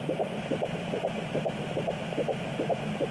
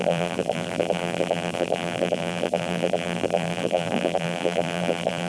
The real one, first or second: first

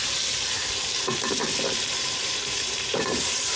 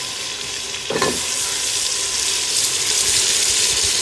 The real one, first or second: second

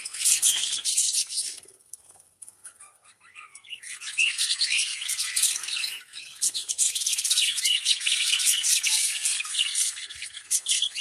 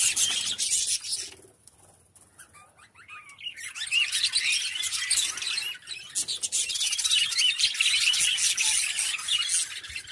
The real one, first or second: second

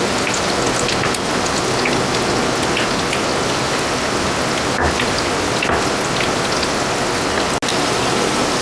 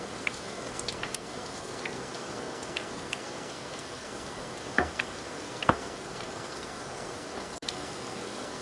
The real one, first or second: first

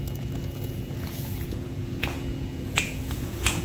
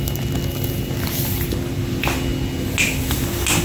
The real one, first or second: second